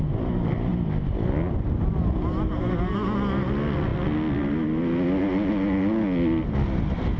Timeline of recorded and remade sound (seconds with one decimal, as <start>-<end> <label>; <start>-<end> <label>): 0.0-7.2 recorded